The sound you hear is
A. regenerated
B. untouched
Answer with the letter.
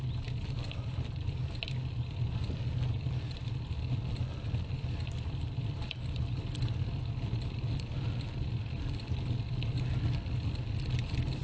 B